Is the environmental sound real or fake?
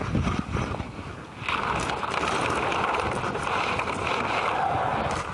real